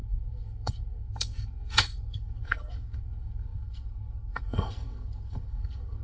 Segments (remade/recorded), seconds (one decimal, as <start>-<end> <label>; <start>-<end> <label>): 0.0-6.0 remade